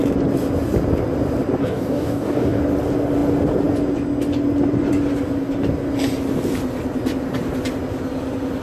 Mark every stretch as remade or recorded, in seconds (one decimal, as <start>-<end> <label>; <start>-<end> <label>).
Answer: 0.0-1.6 recorded; 1.6-2.6 remade; 2.6-8.6 recorded